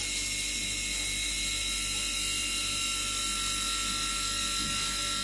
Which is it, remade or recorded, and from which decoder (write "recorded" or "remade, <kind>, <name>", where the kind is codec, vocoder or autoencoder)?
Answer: recorded